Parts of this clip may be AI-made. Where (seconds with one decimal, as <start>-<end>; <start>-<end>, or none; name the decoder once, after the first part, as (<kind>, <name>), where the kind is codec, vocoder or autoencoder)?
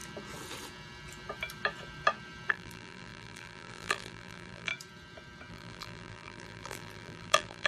2.5-4.7 (vocoder, BigVGAN v2); 5.5-7.7